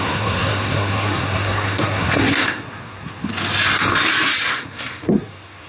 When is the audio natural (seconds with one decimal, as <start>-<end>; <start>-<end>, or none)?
3.3-4.5

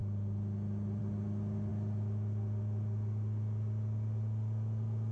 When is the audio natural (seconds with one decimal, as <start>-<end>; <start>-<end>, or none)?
0.0-5.1

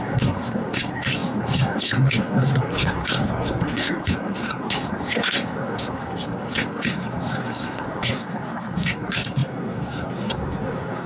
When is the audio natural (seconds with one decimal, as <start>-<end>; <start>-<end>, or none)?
none

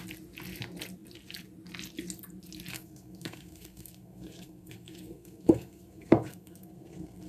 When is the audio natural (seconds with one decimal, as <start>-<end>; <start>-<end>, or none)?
0.0-2.7

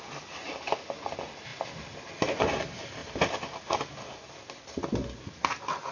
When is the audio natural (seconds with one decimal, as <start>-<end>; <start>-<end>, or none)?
0.0-5.9